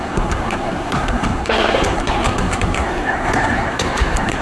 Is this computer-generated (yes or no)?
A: yes